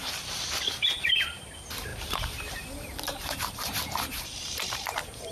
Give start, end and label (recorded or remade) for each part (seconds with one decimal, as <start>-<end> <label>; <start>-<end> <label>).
0.0-5.3 remade